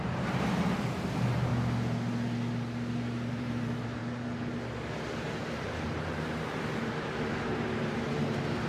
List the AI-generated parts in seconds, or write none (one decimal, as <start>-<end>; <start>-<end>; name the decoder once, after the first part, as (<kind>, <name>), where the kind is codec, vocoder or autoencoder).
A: 0.0-1.5 (vocoder, BigVGAN v2); 3.3-4.0; 5.3-8.7